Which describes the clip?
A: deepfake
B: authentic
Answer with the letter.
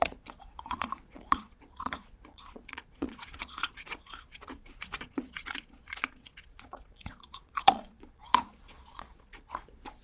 A